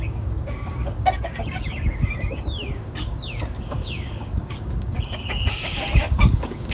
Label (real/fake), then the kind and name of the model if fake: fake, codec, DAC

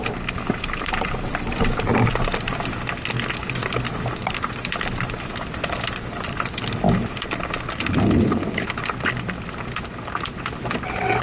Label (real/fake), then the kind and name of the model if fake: real